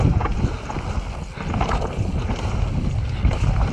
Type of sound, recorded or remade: recorded